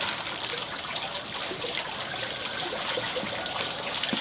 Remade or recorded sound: recorded